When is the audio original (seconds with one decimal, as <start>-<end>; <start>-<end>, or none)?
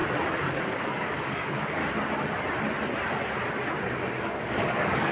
0.0-0.5; 1.8-4.2